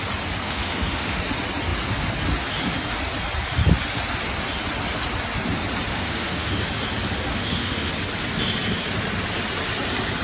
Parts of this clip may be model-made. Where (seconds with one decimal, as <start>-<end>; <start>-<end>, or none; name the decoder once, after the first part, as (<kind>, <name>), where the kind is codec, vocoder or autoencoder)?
0.4-1.2 (autoencoder, DAC-VAE); 5.9-6.6; 7.3-7.9